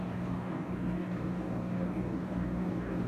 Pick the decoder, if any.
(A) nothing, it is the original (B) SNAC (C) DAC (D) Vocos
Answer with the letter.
C